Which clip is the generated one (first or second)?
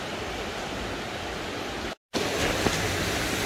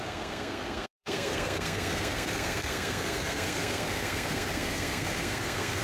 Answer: second